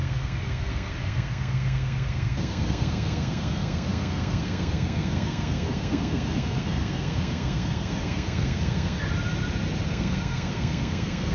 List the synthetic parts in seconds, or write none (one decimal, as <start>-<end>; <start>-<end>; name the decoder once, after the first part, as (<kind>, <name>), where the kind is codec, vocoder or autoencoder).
0.0-9.0 (codec, SNAC); 9.9-11.3